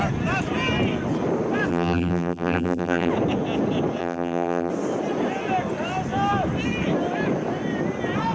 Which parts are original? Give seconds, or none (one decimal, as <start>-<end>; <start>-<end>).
0.0-1.7; 3.1-4.0; 4.7-8.3

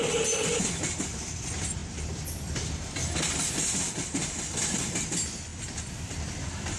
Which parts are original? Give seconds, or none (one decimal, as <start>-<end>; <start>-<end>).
0.0-6.8